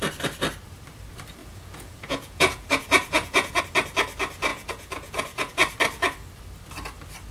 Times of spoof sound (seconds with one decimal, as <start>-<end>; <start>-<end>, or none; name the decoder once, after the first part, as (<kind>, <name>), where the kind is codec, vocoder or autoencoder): 1.4-3.6 (vocoder, Vocos); 4.5-5.5